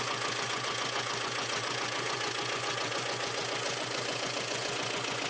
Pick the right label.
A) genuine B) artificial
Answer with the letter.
B